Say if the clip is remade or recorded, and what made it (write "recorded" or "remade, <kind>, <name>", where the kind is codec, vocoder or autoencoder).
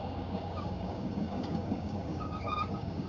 remade, codec, DAC